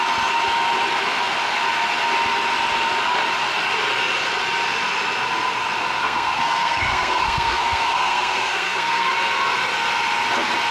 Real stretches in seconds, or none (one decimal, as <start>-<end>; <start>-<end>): 0.0-6.0; 9.1-10.7